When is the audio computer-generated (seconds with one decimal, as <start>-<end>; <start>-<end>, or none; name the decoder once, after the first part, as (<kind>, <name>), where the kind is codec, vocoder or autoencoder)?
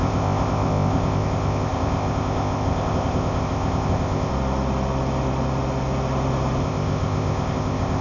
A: 0.0-4.3 (codec, ZipCodec); 6.6-8.0